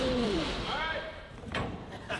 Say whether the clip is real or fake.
fake